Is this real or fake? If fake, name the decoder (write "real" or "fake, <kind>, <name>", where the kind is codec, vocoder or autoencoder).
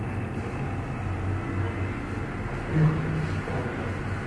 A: real